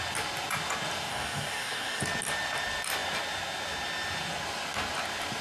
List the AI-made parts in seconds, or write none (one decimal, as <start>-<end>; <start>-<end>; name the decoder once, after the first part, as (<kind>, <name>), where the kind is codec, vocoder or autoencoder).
1.1-2.0 (codec, DAC)